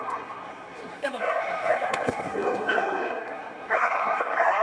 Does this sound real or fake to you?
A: fake